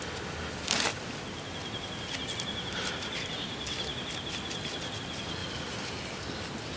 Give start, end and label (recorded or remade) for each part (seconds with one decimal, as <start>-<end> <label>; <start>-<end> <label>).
0.0-5.4 recorded; 5.4-6.8 remade